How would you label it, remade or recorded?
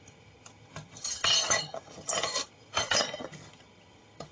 remade